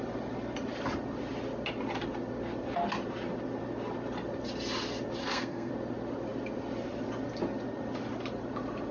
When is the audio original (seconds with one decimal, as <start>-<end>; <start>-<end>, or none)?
0.0-5.2; 5.7-8.9